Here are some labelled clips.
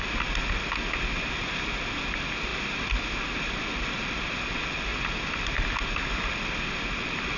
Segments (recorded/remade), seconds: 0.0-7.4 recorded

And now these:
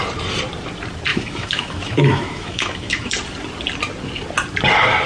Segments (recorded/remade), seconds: 0.0-1.1 recorded; 1.1-3.1 remade; 3.1-5.1 recorded

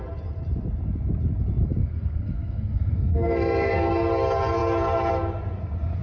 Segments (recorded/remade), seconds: 0.0-1.8 recorded; 1.8-3.9 remade; 3.9-6.0 recorded

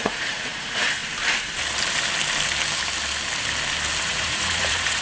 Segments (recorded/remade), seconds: 0.0-1.0 remade; 1.0-4.0 recorded; 4.0-5.0 remade

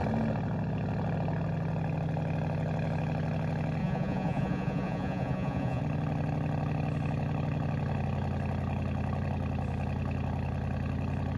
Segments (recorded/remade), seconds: 0.0-3.8 recorded; 3.8-5.8 remade; 5.8-11.4 recorded